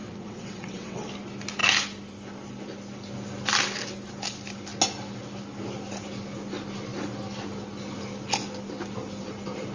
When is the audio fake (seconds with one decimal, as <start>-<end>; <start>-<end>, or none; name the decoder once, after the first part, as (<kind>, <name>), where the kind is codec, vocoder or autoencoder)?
0.0-1.1 (vocoder, WaveNeXt)